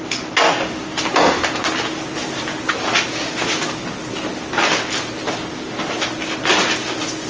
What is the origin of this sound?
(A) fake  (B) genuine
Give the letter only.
B